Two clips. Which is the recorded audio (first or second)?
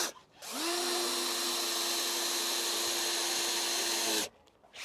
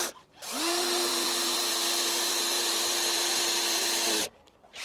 first